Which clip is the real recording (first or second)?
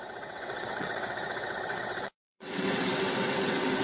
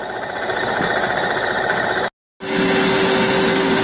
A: second